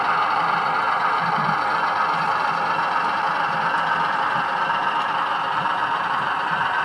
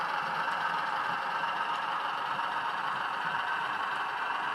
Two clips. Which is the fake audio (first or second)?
second